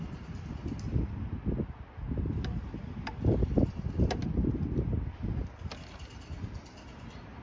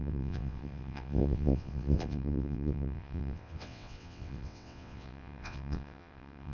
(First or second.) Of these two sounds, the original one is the first